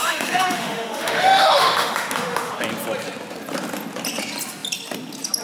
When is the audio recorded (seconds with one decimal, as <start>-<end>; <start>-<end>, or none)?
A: 2.5-5.4